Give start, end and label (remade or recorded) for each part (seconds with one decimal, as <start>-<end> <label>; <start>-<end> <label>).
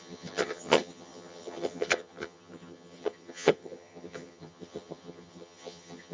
0.0-6.1 remade